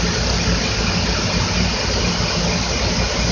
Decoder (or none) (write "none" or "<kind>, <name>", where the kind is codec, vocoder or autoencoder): none